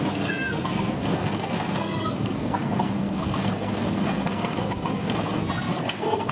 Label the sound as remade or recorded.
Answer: remade